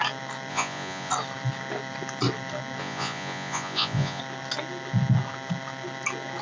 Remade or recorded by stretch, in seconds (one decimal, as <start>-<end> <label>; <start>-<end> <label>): 0.0-0.5 recorded; 0.5-1.1 remade; 1.1-2.8 recorded; 2.8-4.2 remade; 4.2-6.4 recorded